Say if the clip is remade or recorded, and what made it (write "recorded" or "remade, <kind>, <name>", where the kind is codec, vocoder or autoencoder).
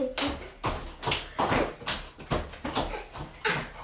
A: recorded